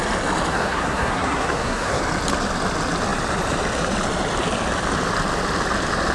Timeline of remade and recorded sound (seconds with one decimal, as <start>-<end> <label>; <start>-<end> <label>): 0.0-0.5 recorded; 0.5-2.0 remade; 2.0-6.1 recorded

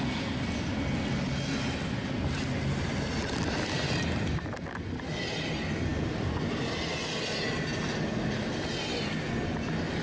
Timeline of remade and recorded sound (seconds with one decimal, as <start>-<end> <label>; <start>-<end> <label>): 0.0-10.0 recorded

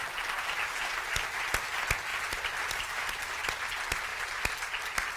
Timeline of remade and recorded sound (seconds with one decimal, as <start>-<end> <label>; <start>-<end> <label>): 0.0-2.1 recorded; 2.1-3.5 remade; 3.5-5.2 recorded